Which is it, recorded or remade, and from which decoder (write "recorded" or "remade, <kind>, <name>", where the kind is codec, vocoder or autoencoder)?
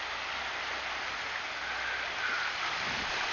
recorded